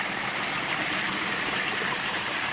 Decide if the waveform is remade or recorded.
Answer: recorded